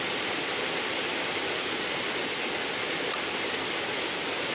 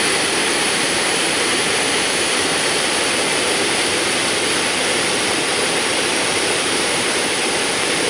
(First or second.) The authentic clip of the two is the first